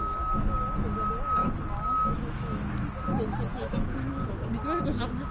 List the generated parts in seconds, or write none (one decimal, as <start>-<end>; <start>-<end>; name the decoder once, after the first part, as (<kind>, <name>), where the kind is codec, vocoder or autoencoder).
1.4-2.7 (autoencoder, DAC-VAE); 3.5-4.1